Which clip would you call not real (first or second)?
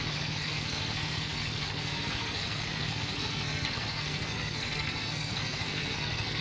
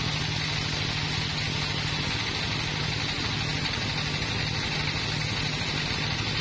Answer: first